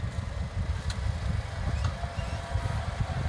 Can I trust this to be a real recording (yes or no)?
yes